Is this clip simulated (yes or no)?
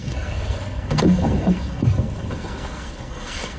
yes